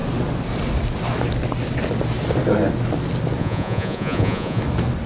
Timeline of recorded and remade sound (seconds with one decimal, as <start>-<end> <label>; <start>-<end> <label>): 0.0-3.4 recorded; 3.4-4.6 remade; 4.6-5.1 recorded